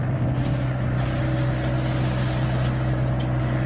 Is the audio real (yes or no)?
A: yes